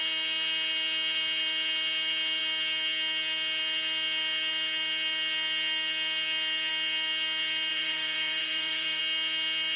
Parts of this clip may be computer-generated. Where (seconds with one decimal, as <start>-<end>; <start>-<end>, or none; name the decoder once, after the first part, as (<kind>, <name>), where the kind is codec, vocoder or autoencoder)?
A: 7.7-9.0 (vocoder, Vocos)